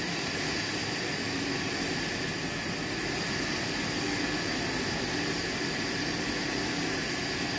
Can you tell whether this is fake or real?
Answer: real